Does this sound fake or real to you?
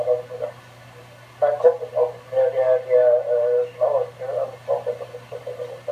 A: real